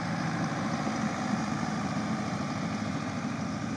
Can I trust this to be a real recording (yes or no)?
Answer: no